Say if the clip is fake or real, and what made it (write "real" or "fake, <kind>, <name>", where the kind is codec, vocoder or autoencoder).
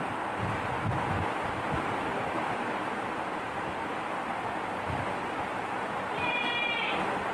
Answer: real